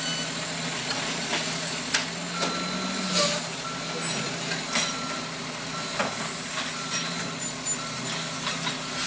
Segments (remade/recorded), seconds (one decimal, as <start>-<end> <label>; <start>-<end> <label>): 0.0-9.1 recorded